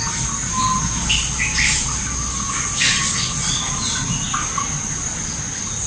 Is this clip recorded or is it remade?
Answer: recorded